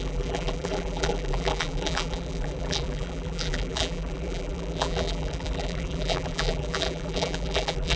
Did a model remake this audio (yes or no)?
yes